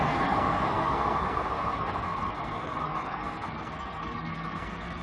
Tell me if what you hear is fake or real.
fake